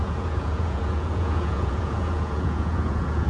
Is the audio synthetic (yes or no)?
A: yes